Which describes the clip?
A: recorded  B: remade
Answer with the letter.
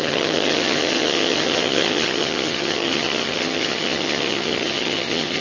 B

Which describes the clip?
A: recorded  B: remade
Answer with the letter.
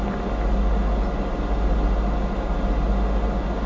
A